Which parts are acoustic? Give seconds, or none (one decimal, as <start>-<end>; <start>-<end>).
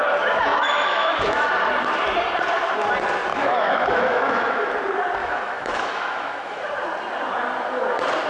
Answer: 0.0-0.5; 1.5-3.3; 4.7-5.2; 6.6-8.3